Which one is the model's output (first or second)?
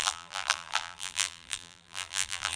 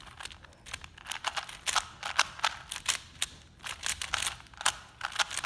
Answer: first